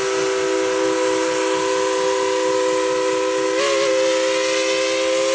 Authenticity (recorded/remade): recorded